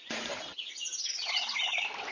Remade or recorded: recorded